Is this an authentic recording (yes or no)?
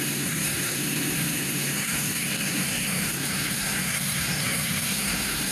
no